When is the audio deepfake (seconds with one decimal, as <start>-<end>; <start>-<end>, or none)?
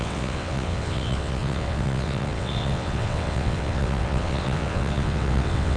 0.0-5.8